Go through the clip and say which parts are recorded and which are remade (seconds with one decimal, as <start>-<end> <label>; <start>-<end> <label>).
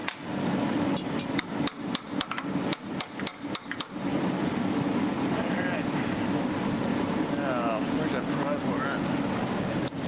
0.0-1.1 recorded; 1.1-3.3 remade; 3.3-6.3 recorded; 6.3-6.9 remade; 6.9-9.6 recorded; 9.6-10.1 remade